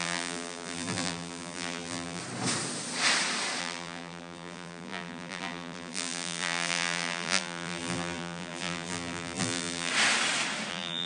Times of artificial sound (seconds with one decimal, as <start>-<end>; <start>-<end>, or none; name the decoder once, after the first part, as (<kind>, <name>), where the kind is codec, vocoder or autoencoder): 0.0-2.2 (vocoder, BigVGAN v2); 3.6-9.9; 10.7-11.1